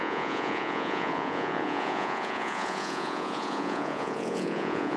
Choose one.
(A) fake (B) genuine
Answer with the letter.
A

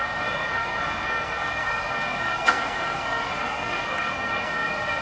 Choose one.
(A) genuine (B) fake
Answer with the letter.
B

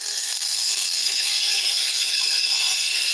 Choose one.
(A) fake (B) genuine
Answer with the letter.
A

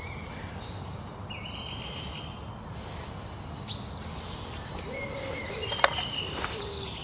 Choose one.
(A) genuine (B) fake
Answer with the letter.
A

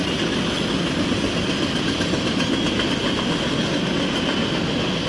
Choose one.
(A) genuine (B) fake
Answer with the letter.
A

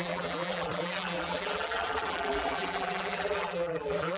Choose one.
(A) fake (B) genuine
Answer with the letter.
A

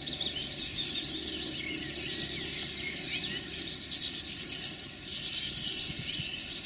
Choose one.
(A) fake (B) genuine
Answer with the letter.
B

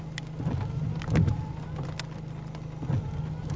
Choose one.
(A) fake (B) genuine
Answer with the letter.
B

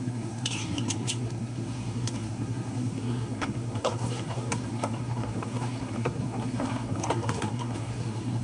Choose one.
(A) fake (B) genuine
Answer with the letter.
A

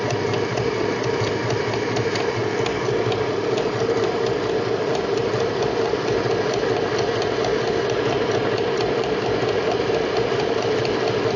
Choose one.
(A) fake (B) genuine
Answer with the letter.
B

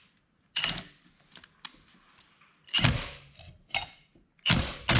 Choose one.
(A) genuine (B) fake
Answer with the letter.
A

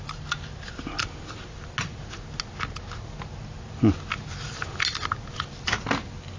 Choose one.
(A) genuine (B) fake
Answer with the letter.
A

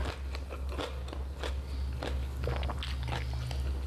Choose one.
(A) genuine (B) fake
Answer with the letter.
A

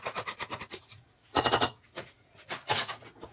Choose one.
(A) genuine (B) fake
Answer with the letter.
B